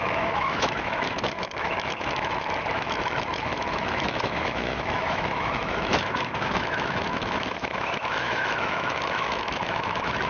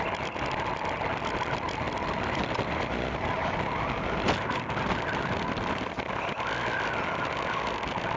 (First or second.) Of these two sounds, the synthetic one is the first